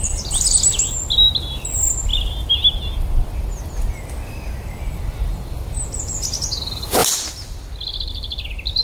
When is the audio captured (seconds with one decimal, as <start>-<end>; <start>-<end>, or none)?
0.0-8.8